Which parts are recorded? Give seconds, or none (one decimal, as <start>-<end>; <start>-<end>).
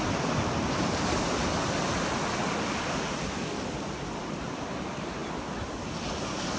0.0-6.6